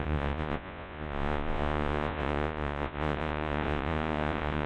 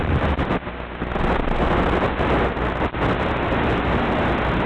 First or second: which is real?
second